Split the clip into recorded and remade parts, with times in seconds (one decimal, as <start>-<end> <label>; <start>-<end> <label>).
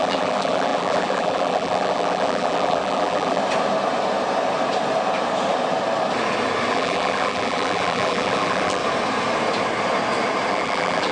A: 0.0-3.4 remade; 3.4-6.7 recorded; 6.7-8.8 remade; 8.8-10.5 recorded; 10.5-11.1 remade